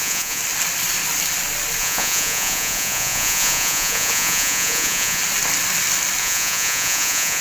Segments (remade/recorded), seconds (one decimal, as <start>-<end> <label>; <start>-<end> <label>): 0.0-0.4 remade; 0.4-1.8 recorded; 1.8-5.2 remade; 5.2-6.2 recorded; 6.2-7.4 remade